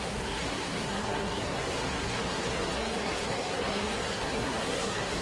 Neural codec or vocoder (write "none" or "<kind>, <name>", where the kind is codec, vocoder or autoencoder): codec, SNAC